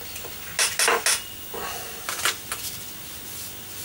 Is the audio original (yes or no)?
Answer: yes